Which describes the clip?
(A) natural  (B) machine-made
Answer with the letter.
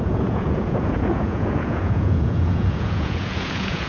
B